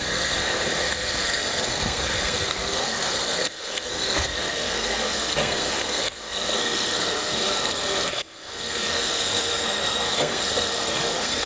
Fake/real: fake